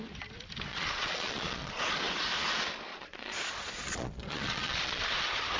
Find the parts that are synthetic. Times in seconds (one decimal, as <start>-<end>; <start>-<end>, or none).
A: 0.7-1.8; 2.9-5.0